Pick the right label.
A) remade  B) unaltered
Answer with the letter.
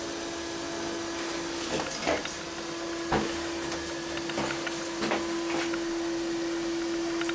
B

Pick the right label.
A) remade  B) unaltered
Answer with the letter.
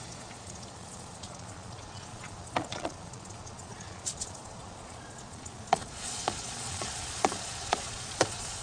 A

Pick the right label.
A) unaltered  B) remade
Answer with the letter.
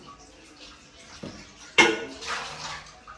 A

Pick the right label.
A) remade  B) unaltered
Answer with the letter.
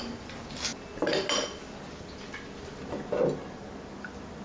B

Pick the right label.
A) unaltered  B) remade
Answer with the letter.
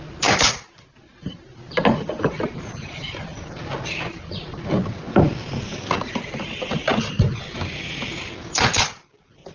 A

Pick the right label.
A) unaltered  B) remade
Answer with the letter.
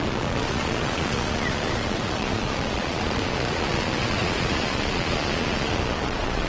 B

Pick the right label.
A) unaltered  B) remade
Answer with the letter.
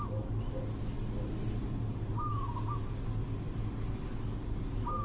A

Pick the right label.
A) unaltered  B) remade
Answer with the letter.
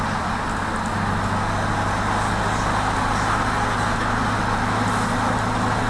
A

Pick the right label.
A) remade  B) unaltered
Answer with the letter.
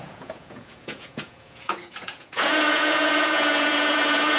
A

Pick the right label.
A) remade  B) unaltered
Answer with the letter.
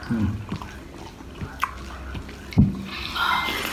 B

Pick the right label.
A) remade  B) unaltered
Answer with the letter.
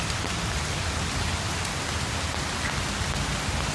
B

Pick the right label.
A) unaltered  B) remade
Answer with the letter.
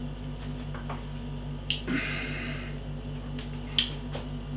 A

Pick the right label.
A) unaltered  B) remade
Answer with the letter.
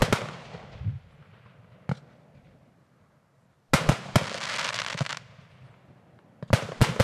A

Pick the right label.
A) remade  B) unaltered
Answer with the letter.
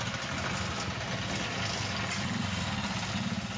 B